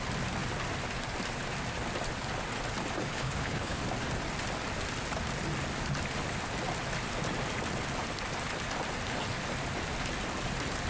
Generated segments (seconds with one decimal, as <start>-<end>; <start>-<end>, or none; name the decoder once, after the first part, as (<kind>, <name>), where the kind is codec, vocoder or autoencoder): 3.1-3.8 (codec, HILCodec)

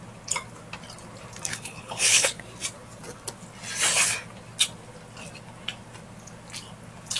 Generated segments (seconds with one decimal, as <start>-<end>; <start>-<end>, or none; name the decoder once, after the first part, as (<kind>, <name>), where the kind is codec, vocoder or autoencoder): 1.5-2.4 (codec, HILCodec)

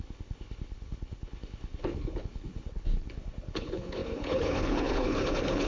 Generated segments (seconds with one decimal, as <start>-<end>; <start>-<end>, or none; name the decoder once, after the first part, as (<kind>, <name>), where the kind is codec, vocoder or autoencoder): 0.0-5.7 (codec, HILCodec)

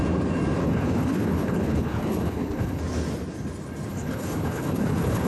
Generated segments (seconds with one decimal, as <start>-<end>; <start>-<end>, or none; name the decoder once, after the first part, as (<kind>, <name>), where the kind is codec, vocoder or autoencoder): 0.6-2.8 (codec, HILCodec); 3.9-5.3

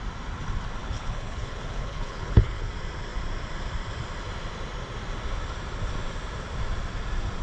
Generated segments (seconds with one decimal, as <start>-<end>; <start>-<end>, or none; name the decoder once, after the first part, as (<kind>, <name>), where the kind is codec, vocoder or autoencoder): 0.8-2.7 (codec, HILCodec)

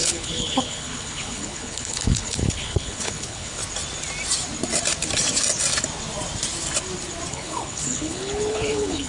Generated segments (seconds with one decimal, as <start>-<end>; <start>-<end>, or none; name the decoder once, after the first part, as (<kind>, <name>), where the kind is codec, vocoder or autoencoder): 0.0-3.6 (codec, HILCodec); 7.3-9.1

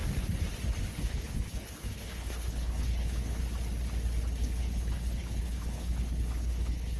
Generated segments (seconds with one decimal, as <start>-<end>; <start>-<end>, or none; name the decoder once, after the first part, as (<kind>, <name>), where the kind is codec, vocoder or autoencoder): 0.9-3.4 (codec, HILCodec); 4.4-7.0